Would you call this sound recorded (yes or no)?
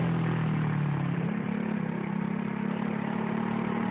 yes